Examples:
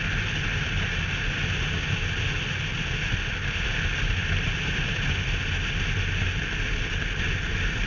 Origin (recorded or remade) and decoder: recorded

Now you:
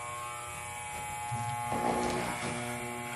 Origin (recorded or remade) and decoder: recorded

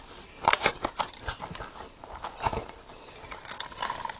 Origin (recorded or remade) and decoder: recorded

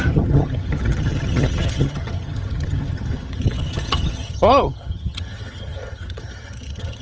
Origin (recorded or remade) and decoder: remade, vocoder, HiFi-GAN